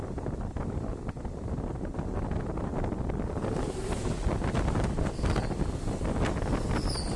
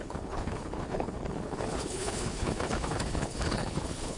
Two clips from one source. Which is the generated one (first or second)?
second